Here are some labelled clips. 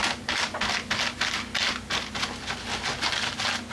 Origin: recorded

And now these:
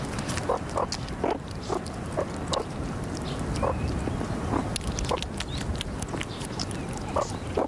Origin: recorded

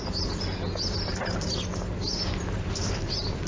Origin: recorded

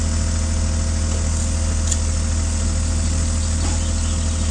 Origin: recorded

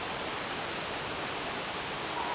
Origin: recorded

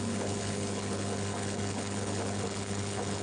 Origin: remade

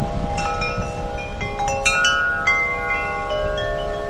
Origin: recorded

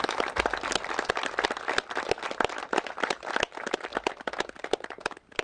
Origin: recorded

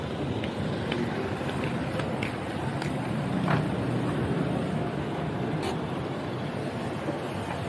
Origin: recorded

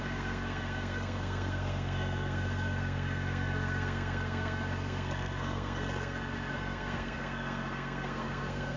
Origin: remade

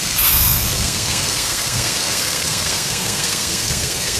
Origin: remade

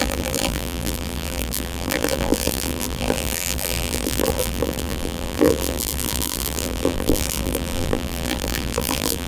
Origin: remade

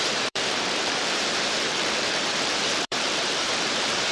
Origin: remade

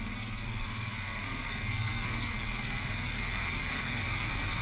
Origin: remade